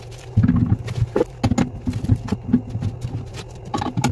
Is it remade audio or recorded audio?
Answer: recorded